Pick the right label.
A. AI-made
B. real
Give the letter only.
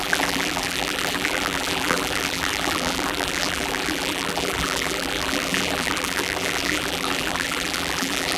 A